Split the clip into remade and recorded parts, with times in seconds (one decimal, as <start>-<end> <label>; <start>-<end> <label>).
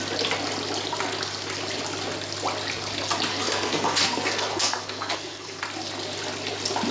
0.0-3.3 recorded; 3.3-5.6 remade; 5.6-6.9 recorded